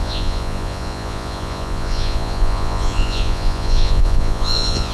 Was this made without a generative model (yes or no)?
no